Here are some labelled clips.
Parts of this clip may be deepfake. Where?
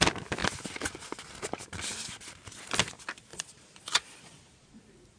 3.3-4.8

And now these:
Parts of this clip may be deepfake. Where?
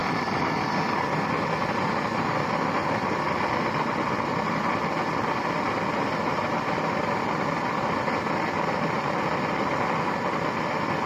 0.0-0.6